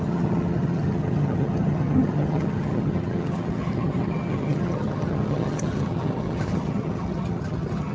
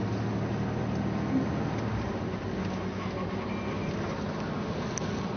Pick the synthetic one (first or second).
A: first